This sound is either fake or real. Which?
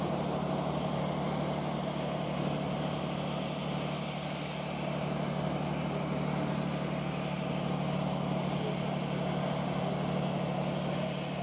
real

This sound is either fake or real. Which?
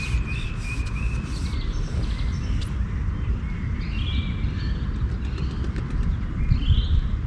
real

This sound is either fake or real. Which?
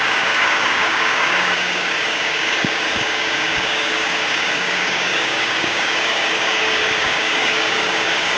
fake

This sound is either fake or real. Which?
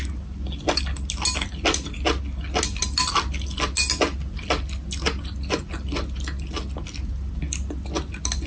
real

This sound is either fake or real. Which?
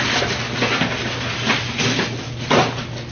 real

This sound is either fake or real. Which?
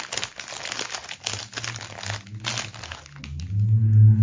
real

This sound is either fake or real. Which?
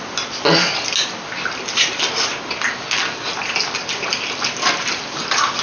real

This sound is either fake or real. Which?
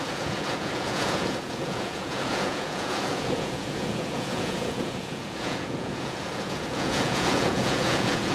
fake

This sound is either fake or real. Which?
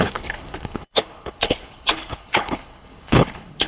fake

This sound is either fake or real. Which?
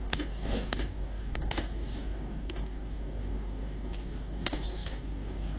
fake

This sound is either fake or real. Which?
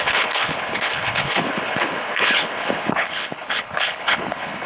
fake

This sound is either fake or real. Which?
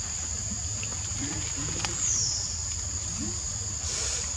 real